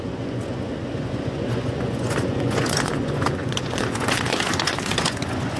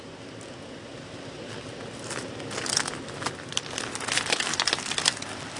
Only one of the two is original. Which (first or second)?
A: second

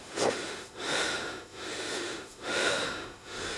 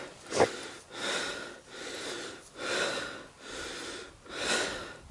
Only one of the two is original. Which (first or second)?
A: second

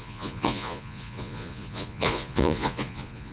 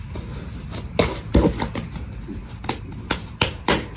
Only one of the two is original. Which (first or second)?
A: second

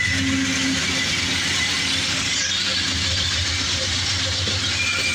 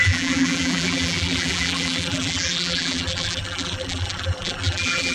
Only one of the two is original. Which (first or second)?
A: first